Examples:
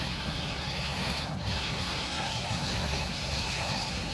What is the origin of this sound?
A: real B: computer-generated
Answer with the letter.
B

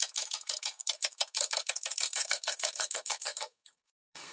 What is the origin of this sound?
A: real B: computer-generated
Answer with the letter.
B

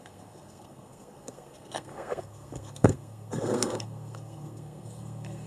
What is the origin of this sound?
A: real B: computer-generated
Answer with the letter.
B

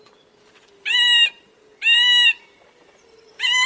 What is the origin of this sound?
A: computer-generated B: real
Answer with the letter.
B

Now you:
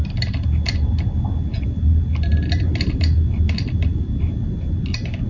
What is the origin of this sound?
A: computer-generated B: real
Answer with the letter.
B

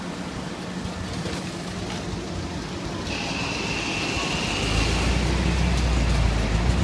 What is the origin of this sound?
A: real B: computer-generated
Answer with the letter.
A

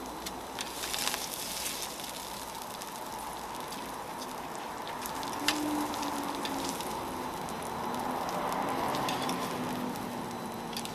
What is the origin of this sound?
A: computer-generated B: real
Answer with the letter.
B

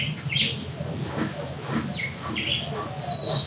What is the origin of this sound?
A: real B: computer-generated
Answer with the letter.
A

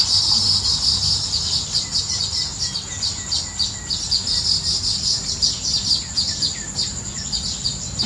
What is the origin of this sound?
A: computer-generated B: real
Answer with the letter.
B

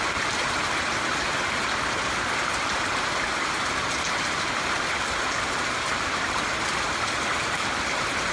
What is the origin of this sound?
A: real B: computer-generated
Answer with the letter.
A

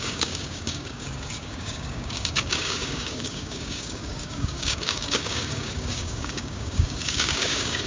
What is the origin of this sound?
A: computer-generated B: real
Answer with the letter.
A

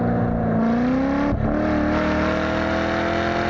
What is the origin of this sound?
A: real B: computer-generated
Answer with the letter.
A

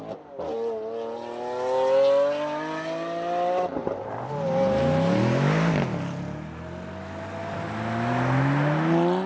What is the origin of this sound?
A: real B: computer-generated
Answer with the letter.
A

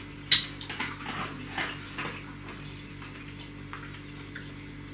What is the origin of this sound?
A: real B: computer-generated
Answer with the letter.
A